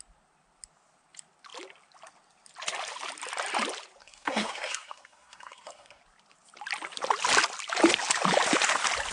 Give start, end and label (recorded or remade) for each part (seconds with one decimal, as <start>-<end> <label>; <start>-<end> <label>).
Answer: 0.0-4.0 recorded; 4.0-6.0 remade; 6.0-9.1 recorded